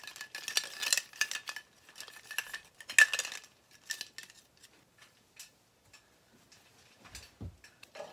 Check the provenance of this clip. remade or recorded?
recorded